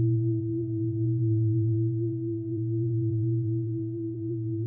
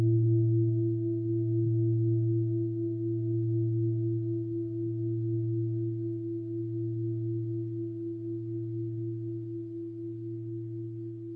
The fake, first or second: first